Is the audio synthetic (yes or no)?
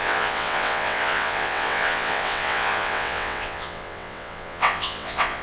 yes